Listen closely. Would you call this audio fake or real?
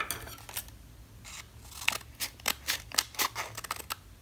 real